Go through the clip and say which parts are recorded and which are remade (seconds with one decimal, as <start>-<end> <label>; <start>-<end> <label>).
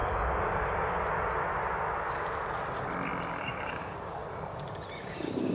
0.0-3.3 recorded; 3.3-4.2 remade; 4.2-4.9 recorded; 4.9-5.5 remade